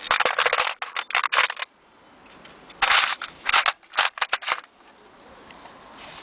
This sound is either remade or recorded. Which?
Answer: recorded